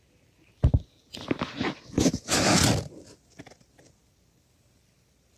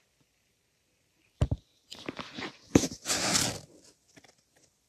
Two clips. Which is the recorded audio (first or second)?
first